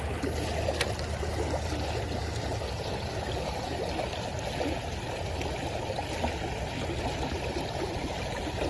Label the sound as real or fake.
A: real